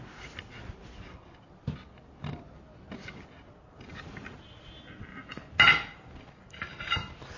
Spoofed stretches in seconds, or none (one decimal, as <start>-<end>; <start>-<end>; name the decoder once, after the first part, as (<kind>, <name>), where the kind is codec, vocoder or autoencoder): none